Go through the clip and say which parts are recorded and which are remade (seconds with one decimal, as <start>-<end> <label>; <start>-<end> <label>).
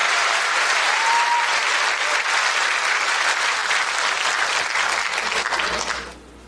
0.0-1.1 remade; 1.1-6.5 recorded